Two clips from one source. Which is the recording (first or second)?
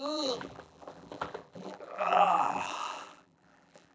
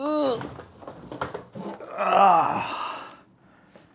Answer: second